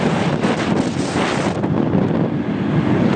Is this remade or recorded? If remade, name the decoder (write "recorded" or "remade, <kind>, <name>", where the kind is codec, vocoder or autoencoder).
recorded